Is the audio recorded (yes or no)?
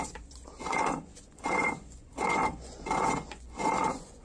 no